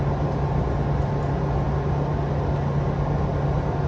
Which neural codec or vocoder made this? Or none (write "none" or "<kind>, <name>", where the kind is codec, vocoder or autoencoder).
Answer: none